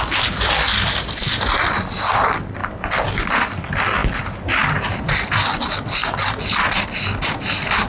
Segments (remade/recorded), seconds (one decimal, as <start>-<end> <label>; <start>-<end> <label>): 0.0-7.9 recorded